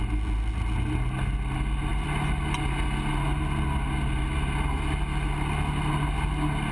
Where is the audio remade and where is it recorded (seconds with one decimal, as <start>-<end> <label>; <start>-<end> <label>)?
0.0-6.7 recorded